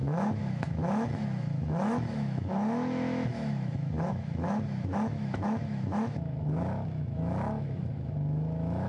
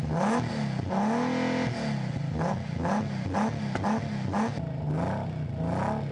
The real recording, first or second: second